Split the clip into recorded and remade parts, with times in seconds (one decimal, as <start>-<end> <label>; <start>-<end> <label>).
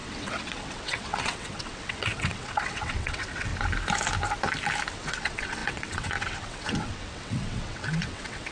0.0-3.5 remade; 3.5-4.9 recorded; 4.9-8.5 remade